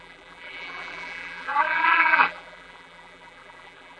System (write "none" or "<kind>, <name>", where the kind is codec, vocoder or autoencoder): vocoder, BigVGAN v2